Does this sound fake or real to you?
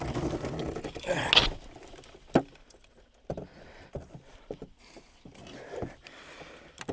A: real